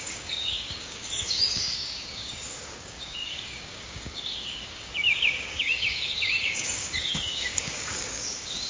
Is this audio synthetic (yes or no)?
yes